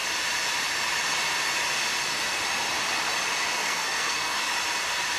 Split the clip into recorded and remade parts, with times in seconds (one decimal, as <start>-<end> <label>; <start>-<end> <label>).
0.0-3.6 recorded; 3.6-4.5 remade; 4.5-5.2 recorded